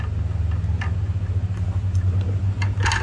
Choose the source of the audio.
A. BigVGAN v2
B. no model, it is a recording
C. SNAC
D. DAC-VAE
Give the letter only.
B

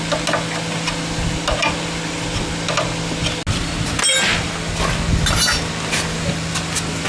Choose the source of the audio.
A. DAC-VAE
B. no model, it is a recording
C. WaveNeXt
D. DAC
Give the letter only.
B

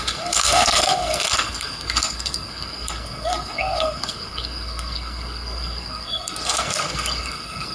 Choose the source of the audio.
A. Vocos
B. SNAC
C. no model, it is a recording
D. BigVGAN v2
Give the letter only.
B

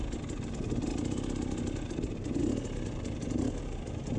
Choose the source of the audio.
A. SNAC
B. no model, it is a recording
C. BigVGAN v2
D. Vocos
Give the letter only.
B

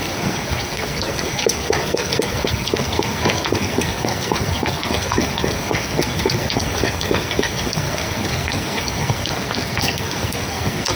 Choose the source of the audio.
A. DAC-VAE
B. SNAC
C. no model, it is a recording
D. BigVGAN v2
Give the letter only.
B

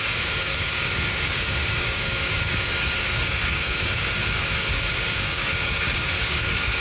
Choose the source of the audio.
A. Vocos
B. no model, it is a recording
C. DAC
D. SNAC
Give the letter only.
C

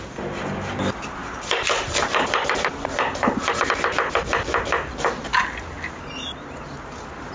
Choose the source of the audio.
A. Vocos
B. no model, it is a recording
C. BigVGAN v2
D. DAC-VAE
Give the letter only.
B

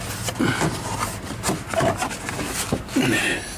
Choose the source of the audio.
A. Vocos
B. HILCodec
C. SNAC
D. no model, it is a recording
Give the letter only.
D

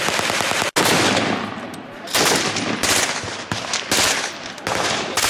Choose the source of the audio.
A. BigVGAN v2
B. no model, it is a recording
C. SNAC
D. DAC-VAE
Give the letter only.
B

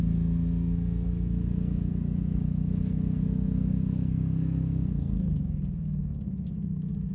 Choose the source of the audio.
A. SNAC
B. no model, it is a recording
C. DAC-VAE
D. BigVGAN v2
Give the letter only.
A